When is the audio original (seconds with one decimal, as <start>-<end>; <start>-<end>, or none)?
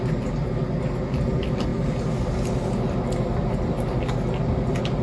0.0-5.0